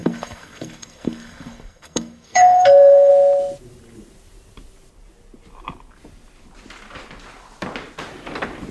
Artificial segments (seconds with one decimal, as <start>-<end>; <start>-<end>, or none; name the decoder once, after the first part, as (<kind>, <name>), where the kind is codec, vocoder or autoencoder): 0.0-3.1 (codec, SNAC)